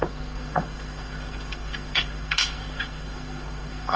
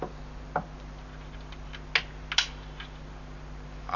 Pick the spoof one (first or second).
first